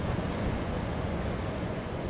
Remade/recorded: remade